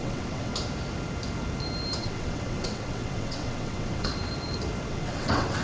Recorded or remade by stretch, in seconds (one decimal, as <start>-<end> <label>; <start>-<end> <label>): 0.0-0.5 remade; 0.5-2.0 recorded; 2.0-4.1 remade; 4.1-4.9 recorded; 4.9-5.6 remade